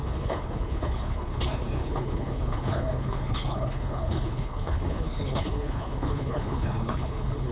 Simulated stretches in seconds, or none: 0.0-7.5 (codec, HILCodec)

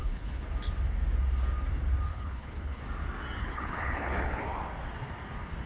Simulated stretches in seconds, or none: 0.0-0.5 (codec, HILCodec); 2.1-2.8; 3.4-4.4

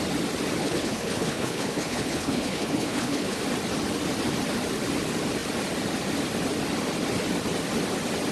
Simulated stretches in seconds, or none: 0.6-3.4 (codec, HILCodec)

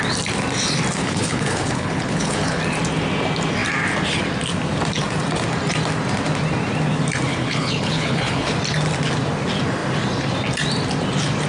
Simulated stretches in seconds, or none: 1.0-2.6 (codec, HILCodec); 7.3-8.5